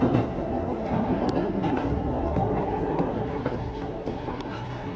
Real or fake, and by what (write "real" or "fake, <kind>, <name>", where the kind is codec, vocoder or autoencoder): fake, codec, SNAC